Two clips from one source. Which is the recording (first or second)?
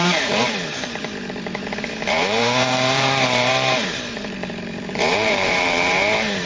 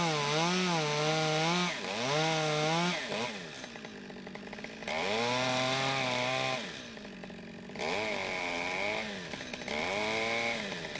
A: second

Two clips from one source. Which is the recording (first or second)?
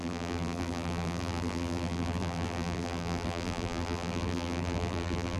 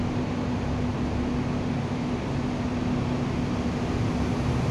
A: second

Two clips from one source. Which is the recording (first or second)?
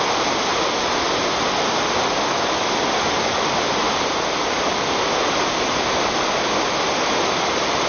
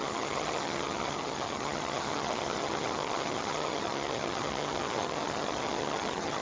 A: first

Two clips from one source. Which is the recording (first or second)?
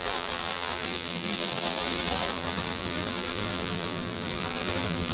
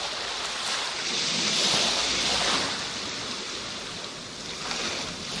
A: second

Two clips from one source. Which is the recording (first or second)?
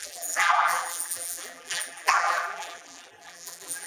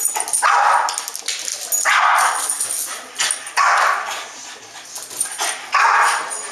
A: second